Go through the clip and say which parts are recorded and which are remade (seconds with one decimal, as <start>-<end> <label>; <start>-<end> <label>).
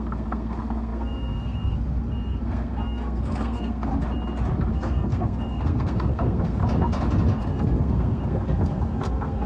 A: 0.0-3.9 remade; 3.9-4.7 recorded; 4.7-6.6 remade; 6.6-7.4 recorded; 7.4-9.5 remade